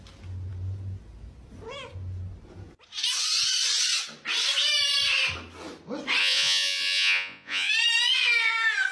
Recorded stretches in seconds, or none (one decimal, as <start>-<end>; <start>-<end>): 0.0-6.2; 7.7-8.9